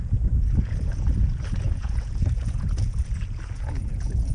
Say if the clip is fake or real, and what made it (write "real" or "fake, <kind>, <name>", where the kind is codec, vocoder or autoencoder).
fake, vocoder, Vocos